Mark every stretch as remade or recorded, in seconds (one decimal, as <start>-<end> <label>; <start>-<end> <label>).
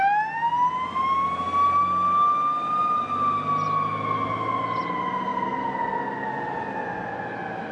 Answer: 0.0-7.7 recorded